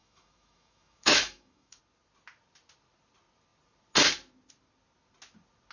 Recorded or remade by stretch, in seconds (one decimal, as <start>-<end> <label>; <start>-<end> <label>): 0.0-1.8 remade; 1.8-5.7 recorded